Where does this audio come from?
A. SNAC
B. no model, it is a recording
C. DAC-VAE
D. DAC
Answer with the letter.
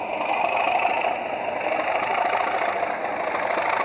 B